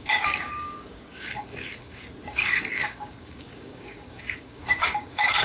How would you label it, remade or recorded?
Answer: remade